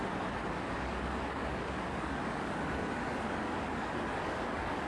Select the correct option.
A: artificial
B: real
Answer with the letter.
A